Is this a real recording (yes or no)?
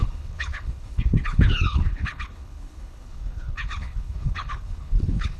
no